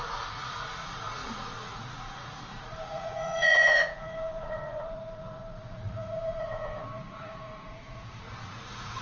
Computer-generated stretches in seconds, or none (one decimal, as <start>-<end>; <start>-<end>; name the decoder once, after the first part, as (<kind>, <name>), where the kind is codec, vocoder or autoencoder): 0.0-9.0 (vocoder, Vocos)